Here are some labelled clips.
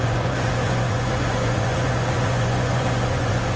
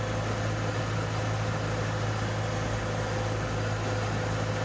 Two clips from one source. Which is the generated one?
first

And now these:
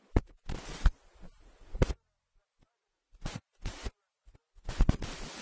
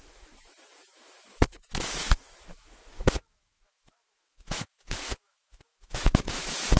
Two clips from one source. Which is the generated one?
second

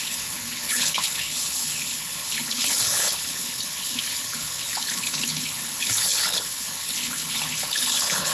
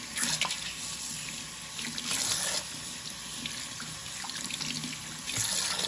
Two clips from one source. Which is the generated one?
first